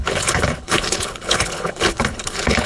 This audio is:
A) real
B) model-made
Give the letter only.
B